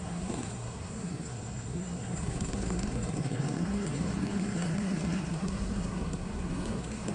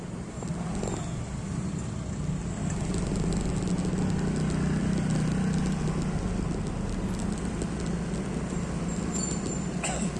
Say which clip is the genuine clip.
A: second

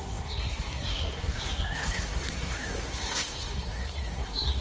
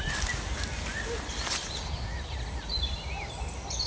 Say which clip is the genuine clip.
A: second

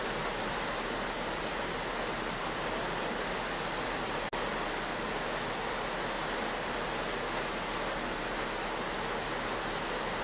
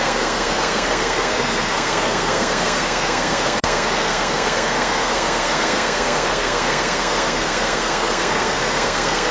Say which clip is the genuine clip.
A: first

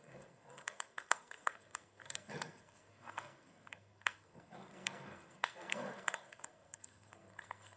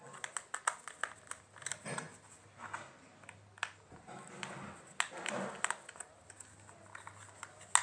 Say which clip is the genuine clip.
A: second